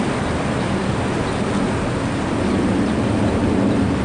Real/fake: real